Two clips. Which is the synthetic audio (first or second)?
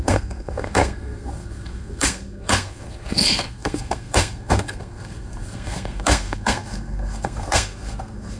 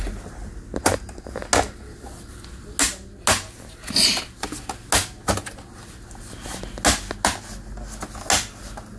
first